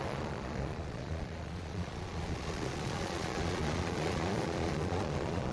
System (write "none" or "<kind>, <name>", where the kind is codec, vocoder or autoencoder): vocoder, Vocos